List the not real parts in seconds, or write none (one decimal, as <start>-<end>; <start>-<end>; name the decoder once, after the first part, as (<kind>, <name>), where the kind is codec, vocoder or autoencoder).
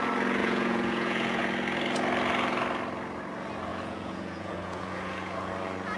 0.4-1.4 (vocoder, Vocos); 3.7-5.5